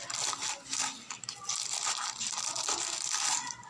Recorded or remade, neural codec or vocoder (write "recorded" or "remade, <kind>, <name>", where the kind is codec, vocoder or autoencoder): recorded